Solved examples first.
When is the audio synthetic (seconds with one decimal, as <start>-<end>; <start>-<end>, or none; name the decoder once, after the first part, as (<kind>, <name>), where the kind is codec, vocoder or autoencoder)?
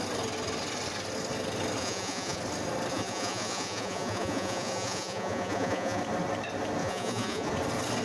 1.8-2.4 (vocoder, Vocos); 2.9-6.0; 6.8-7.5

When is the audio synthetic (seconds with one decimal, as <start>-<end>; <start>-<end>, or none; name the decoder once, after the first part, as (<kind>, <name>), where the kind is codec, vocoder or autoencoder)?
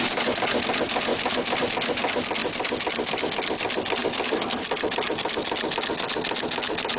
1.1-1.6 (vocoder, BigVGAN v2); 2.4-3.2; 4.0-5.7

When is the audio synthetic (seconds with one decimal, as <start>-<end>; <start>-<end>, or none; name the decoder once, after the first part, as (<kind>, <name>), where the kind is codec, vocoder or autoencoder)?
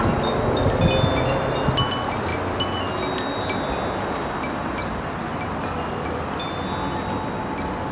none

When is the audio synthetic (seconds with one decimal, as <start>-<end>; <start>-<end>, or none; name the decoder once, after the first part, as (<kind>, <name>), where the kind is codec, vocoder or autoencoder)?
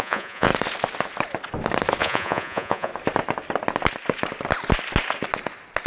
0.0-0.5 (vocoder, Vocos); 2.0-2.9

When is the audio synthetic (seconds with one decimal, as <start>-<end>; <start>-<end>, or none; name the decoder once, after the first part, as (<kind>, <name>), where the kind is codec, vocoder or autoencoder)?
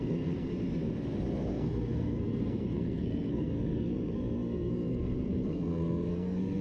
0.0-0.5 (codec, SNAC); 1.5-6.6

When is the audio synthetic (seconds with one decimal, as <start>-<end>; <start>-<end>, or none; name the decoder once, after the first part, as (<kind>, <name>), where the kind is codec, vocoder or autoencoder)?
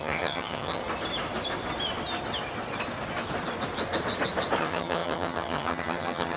0.0-0.8 (vocoder, HiFi-GAN); 4.6-6.4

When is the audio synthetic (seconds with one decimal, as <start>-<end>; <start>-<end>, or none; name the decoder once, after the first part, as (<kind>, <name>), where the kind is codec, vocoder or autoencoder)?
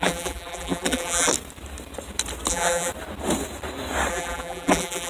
0.0-1.3 (vocoder, BigVGAN v2); 2.5-2.9; 4.1-5.1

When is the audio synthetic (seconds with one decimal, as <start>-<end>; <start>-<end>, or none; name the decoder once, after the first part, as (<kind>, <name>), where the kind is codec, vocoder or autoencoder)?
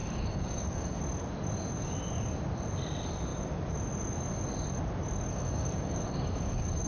0.0-1.0 (codec, DAC); 5.3-6.9